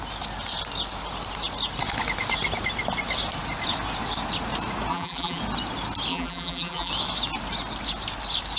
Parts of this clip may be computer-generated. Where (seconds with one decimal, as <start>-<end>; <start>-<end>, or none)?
4.9-5.4; 6.1-6.9